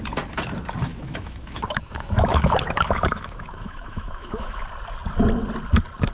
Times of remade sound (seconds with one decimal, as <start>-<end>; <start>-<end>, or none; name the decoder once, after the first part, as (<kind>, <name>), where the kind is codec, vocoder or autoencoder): 0.9-4.6 (autoencoder, DAC-VAE)